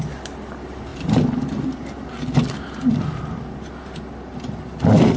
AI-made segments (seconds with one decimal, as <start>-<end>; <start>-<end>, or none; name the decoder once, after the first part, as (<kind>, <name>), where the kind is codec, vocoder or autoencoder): 0.0-0.9 (vocoder, BigVGAN v2); 2.9-5.2